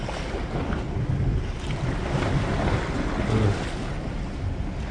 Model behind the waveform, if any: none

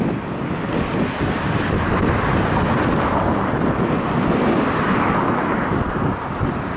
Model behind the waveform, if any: none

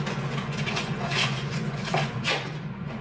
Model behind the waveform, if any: vocoder, Vocos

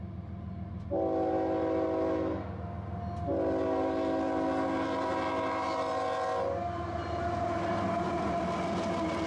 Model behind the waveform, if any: none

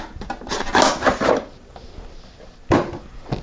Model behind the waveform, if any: none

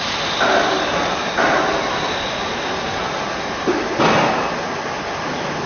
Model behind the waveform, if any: none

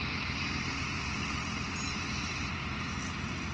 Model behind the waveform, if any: none